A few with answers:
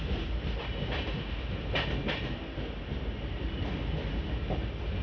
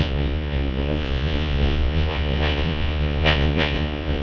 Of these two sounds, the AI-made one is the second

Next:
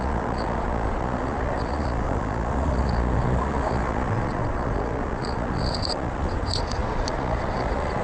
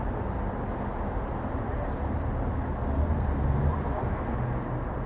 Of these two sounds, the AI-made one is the first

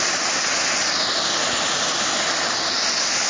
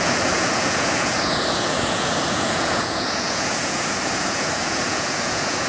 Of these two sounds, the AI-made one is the second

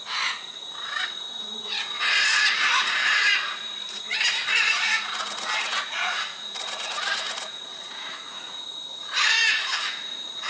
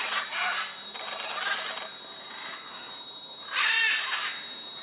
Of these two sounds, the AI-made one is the first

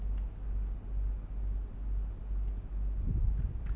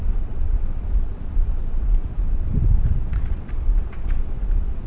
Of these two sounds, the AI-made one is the second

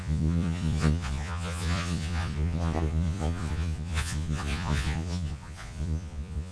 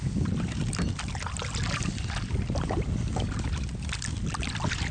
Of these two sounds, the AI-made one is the first